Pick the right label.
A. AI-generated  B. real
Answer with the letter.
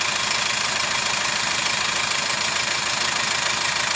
B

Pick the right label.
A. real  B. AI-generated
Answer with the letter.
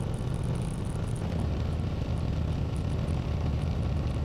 A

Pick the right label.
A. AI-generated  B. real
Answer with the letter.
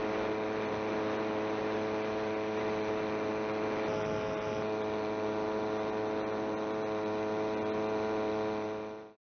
B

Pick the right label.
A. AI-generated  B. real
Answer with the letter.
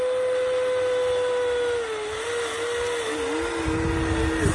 B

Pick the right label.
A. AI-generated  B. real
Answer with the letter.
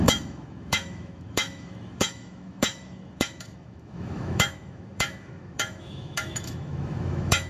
A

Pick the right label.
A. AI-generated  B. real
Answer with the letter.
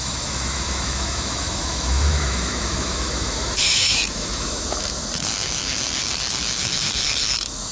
A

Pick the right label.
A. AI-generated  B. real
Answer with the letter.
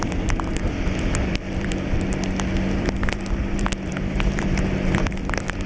B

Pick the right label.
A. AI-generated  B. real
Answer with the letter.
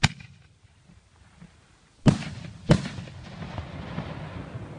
B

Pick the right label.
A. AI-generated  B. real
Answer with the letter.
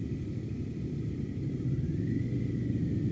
B